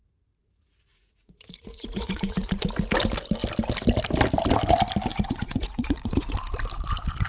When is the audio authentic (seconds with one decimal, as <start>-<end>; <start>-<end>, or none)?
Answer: 2.6-5.1; 6.3-7.3